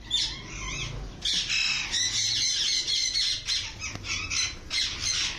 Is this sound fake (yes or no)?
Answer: no